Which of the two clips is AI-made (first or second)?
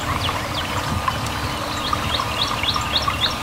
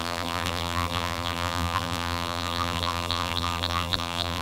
second